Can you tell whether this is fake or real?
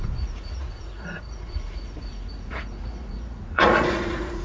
fake